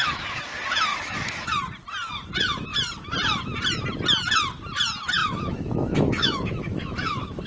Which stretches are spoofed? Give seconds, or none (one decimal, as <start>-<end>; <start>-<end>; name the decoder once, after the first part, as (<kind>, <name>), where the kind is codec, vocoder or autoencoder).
0.9-1.5 (autoencoder, DAC-VAE); 5.2-7.5